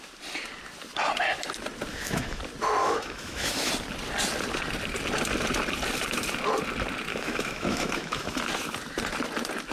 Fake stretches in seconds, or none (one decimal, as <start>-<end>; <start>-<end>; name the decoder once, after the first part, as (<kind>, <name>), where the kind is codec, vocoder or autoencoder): 1.9-2.4 (autoencoder, DAC-VAE); 2.8-3.7; 7.1-8.4